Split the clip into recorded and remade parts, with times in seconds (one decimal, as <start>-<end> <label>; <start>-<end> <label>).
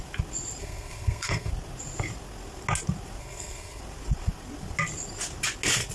0.0-0.6 recorded; 0.6-1.5 remade; 1.5-3.2 recorded; 3.2-3.8 remade; 3.8-5.9 recorded